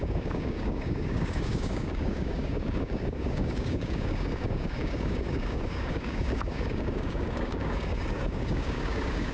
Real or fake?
fake